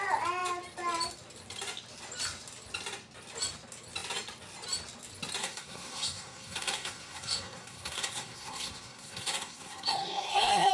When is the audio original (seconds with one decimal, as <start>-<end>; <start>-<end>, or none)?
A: 0.0-5.4